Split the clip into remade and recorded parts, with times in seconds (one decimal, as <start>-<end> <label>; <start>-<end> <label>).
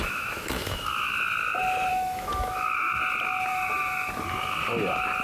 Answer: 0.0-0.9 remade; 0.9-1.9 recorded; 1.9-3.0 remade; 3.0-3.5 recorded; 3.5-4.1 remade; 4.1-5.2 recorded